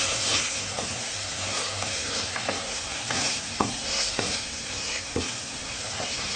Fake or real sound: fake